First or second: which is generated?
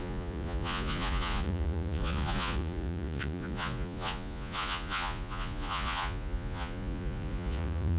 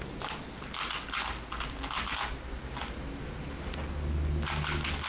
first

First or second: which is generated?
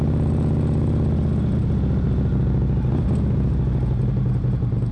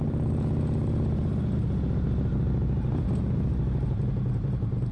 second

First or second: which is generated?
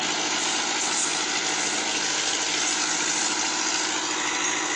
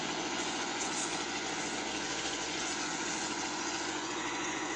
second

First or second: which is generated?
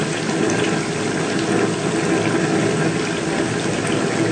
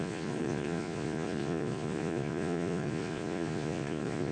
second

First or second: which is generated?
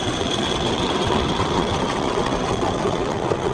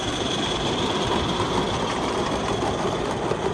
first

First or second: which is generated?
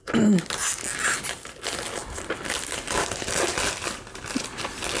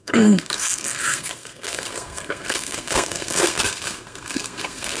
second